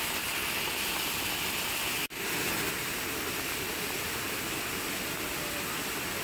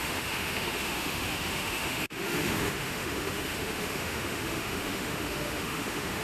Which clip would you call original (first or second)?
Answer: first